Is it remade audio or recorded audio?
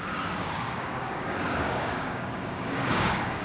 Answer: remade